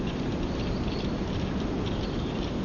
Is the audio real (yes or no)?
yes